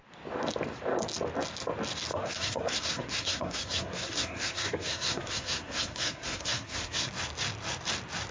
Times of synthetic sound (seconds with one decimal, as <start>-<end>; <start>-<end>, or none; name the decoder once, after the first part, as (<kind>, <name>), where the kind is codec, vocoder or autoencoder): 2.1-7.1 (codec, SNAC)